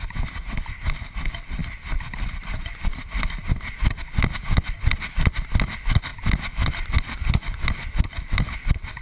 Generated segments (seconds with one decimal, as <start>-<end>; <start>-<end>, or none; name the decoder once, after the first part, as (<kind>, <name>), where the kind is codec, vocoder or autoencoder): 1.6-2.7 (vocoder, BigVGAN v2)